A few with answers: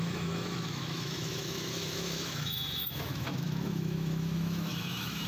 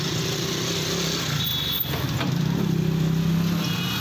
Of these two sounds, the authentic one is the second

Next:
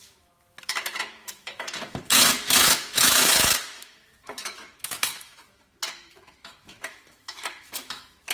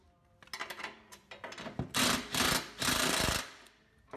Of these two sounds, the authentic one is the second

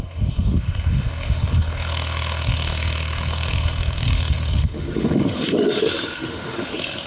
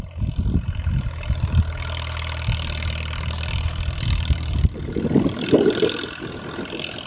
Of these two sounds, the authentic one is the second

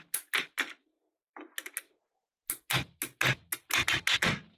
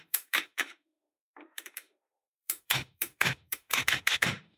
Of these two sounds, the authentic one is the first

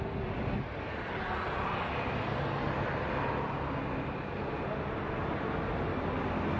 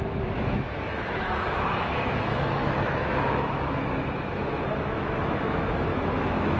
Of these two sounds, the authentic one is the first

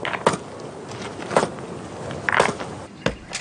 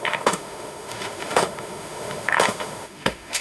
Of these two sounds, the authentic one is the first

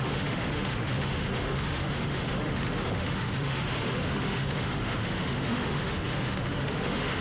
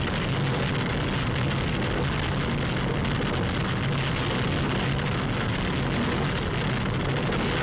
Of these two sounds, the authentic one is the second